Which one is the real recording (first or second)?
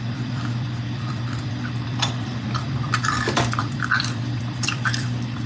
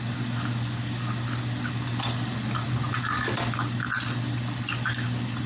second